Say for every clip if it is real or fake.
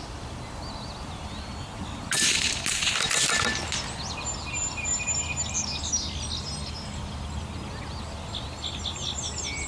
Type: real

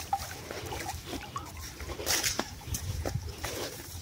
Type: fake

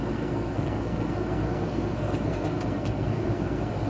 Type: fake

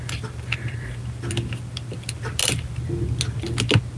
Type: real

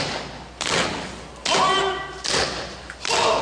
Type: real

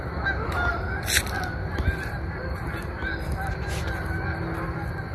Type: real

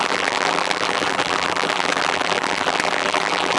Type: fake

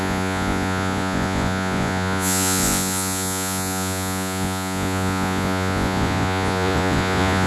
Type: fake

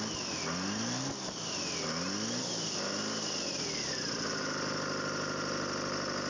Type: real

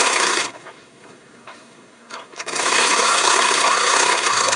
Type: fake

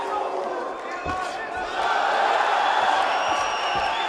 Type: real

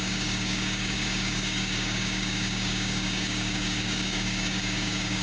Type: fake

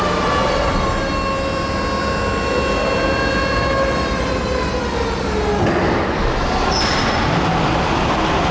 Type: real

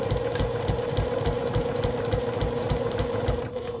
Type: fake